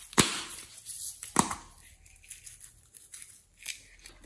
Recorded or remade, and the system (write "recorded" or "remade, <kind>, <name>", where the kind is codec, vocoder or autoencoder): recorded